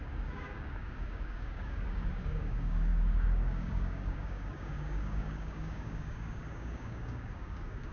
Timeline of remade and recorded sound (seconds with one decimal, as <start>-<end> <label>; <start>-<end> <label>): 0.0-7.9 remade